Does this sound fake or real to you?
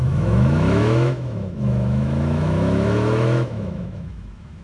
fake